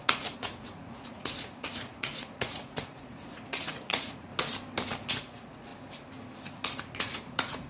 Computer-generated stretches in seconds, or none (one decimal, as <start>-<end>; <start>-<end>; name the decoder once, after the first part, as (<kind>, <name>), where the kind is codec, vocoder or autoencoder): 0.0-4.3 (vocoder, Vocos); 5.1-5.7; 6.8-7.7